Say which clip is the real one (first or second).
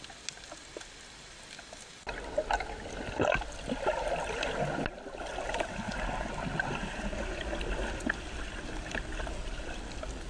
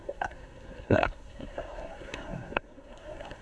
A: first